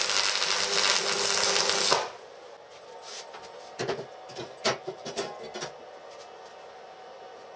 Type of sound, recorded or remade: recorded